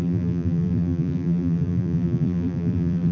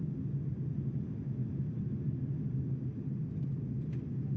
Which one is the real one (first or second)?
second